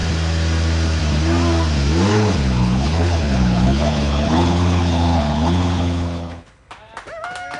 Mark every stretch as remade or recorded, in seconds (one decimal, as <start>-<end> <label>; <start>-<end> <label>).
0.0-2.1 recorded; 2.1-6.7 remade; 6.7-7.6 recorded